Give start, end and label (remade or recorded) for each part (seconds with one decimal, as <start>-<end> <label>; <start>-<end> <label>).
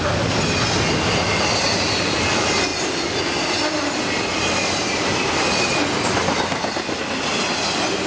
0.0-8.1 recorded